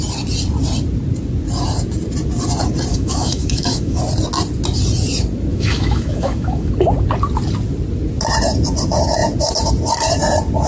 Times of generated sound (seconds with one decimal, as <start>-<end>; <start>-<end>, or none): 2.9-4.0; 5.5-6.7